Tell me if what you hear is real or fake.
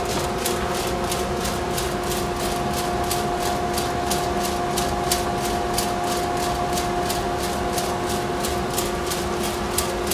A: real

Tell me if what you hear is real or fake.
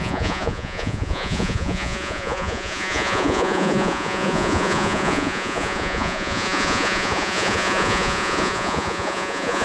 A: fake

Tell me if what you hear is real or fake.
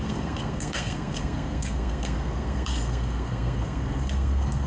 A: fake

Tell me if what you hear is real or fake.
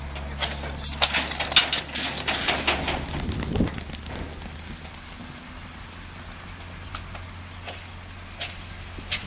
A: real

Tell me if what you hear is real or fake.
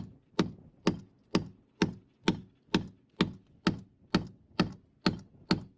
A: real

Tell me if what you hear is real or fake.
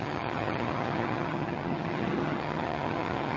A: fake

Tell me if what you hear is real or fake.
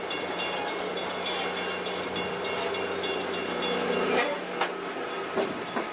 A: real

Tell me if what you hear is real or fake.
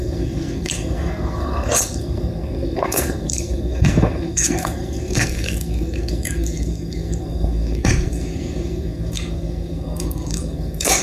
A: fake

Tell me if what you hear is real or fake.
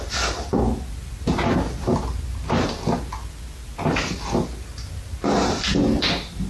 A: real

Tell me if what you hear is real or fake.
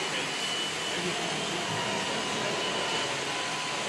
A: real